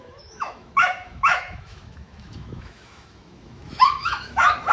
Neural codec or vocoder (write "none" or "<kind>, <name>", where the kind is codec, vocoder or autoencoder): autoencoder, DAC-VAE